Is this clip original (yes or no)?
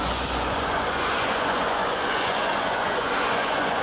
no